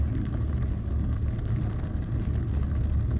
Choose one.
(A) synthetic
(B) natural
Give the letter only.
B